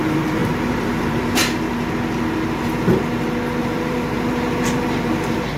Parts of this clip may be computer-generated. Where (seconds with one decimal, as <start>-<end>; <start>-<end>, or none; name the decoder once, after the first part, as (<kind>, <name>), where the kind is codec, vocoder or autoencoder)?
0.0-1.4 (vocoder, BigVGAN v2); 3.6-5.6